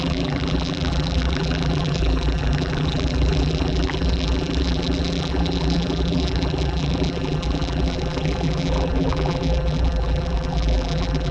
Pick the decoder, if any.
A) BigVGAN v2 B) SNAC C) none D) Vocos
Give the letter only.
A